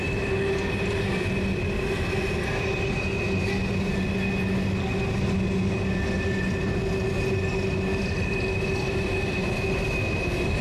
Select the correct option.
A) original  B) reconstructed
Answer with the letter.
A